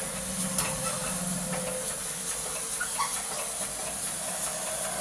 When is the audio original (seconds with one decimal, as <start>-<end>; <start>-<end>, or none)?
0.0-5.0